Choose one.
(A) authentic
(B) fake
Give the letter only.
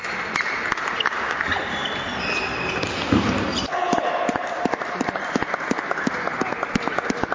A